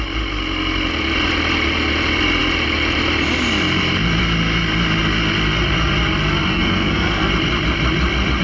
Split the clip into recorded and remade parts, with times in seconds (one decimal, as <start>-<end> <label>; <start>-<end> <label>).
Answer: 0.0-6.5 recorded; 6.5-7.3 remade; 7.3-8.4 recorded